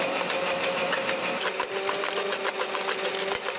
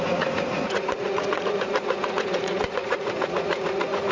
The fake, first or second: second